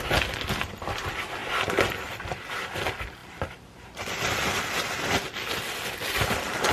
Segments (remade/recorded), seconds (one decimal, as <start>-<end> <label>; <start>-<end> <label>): 0.0-6.7 recorded